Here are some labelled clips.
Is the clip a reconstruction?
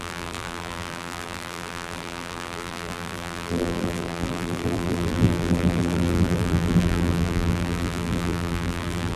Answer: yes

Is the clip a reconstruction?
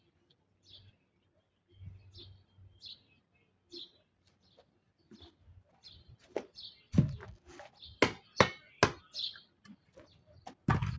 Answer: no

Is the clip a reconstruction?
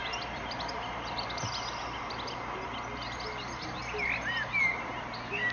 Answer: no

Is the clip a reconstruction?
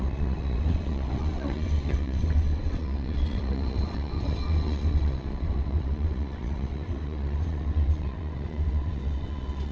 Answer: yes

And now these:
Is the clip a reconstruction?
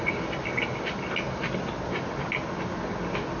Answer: no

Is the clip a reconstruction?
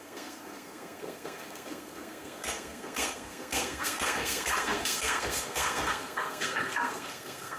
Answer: yes